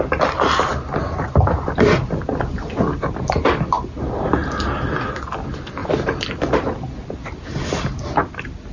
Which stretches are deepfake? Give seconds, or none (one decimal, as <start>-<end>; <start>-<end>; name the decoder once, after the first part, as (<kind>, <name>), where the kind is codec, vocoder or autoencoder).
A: 0.7-2.7 (vocoder, BigVGAN v2); 5.8-6.4